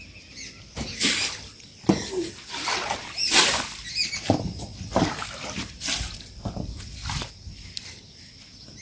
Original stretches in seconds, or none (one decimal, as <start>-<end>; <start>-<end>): 0.0-8.8